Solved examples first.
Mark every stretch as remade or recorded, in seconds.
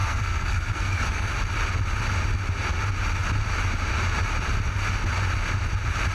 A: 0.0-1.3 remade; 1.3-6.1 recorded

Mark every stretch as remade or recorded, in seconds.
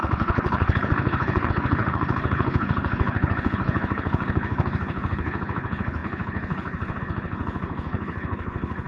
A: 0.0-8.9 remade